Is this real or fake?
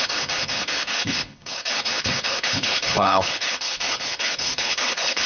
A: fake